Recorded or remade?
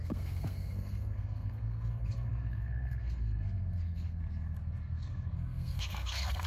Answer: remade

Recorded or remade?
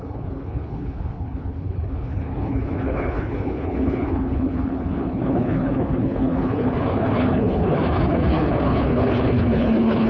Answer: remade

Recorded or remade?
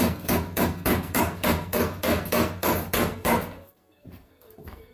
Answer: remade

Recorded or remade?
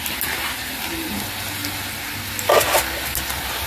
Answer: recorded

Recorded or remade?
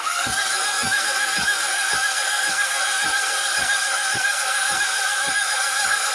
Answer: remade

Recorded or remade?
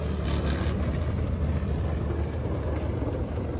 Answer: recorded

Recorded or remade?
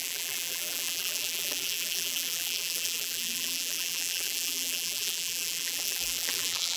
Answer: remade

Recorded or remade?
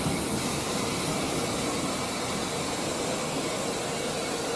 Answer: recorded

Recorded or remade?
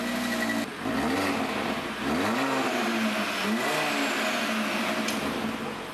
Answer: recorded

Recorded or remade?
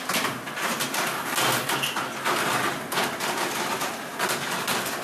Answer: recorded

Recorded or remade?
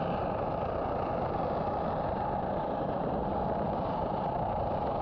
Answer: recorded